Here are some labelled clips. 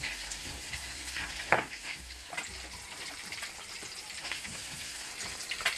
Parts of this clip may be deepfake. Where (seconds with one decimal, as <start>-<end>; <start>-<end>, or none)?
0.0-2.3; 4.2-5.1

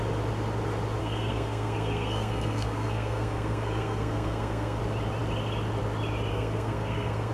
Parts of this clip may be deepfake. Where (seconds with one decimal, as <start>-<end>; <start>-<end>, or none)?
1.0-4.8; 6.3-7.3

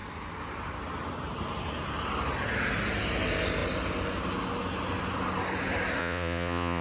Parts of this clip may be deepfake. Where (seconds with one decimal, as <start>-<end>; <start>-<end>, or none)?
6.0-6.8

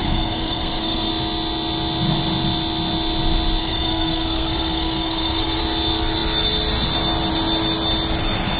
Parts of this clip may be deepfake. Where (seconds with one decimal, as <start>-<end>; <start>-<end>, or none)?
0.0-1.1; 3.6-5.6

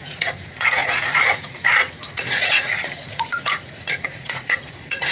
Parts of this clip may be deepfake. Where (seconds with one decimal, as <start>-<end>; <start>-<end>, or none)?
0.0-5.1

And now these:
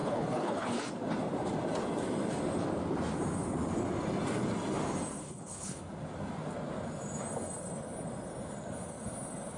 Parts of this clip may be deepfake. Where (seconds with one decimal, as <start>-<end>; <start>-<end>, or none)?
0.0-0.9; 5.2-5.8

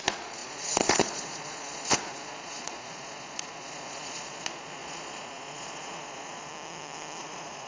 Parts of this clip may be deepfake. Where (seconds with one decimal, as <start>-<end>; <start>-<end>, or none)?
0.0-6.5; 7.2-7.7